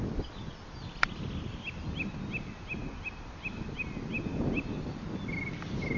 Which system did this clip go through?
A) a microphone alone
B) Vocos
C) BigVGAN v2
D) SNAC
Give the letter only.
A